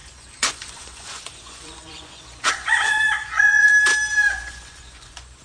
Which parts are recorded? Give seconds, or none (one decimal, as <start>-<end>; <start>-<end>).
3.7-4.3